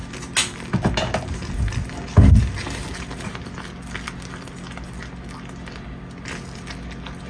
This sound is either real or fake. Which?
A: real